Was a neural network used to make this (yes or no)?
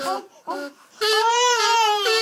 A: yes